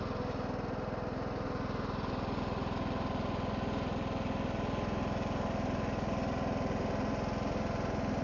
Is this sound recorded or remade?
recorded